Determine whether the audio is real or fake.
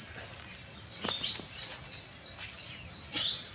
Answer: real